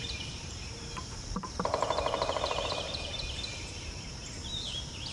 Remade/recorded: remade